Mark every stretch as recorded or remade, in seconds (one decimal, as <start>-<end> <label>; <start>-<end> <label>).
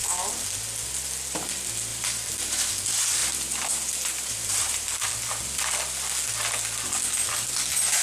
0.0-1.9 recorded; 1.9-2.7 remade; 2.7-3.2 recorded; 3.2-5.3 remade; 5.3-8.0 recorded